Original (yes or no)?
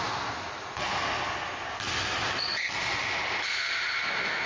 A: yes